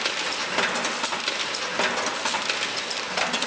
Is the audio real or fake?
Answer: real